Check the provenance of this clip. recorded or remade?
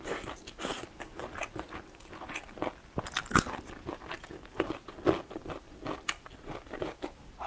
recorded